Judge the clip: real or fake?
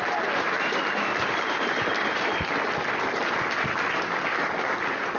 fake